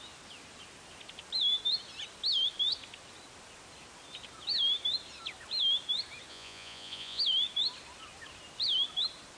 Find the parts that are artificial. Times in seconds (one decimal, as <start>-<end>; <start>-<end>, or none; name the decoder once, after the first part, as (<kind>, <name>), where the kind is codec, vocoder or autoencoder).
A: 6.3-7.2 (vocoder, Vocos)